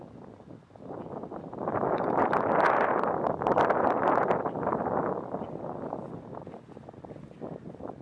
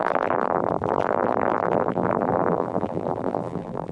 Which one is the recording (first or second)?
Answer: first